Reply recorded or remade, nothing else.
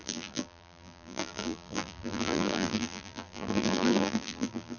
remade